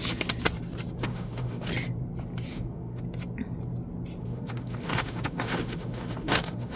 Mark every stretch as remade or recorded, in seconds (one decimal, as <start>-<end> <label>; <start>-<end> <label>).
0.0-1.0 recorded; 1.0-1.7 remade; 1.7-2.5 recorded; 2.5-3.0 remade; 3.0-4.2 recorded; 4.2-6.8 remade